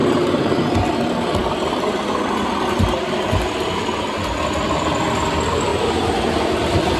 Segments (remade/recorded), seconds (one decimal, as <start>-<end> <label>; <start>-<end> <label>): 0.0-0.6 remade; 0.6-5.7 recorded; 5.7-6.3 remade; 6.3-7.0 recorded